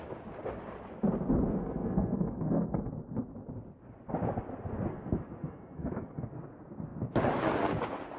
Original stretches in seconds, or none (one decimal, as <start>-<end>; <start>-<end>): 0.0-1.6; 2.8-4.9; 6.4-8.2